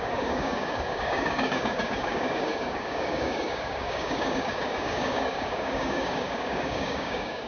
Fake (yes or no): yes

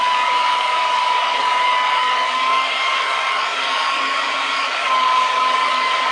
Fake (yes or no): yes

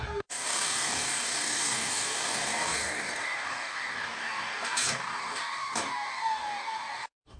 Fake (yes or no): yes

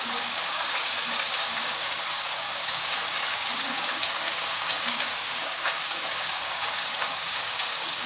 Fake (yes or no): yes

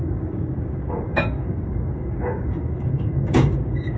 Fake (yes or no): yes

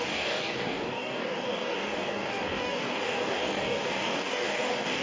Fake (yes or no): yes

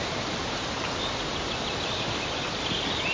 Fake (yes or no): no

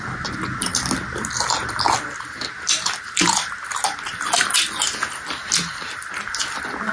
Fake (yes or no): no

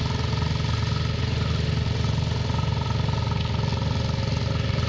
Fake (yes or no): no